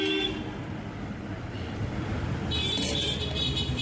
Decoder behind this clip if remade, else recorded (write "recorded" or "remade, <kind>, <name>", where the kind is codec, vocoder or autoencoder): recorded